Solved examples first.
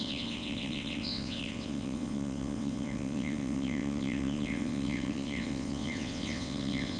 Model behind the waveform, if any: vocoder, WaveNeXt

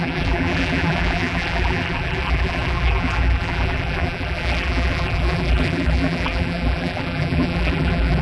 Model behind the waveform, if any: vocoder, BigVGAN v2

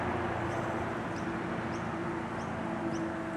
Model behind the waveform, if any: none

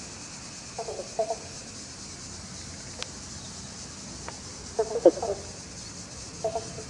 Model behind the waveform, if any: none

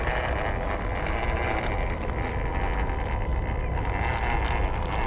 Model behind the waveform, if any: none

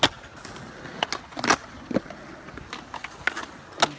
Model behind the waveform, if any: none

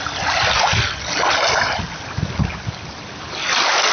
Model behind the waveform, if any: none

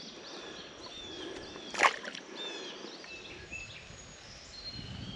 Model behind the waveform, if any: none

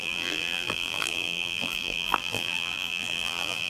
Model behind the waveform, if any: vocoder, BigVGAN v2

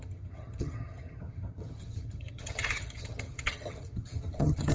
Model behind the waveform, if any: vocoder, HiFi-GAN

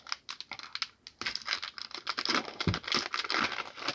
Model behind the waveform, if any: none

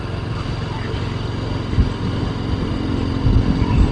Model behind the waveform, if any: none